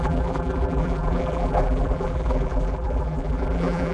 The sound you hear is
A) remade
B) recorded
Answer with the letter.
A